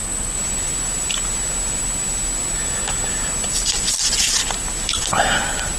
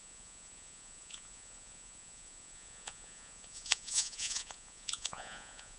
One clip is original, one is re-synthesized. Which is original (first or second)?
first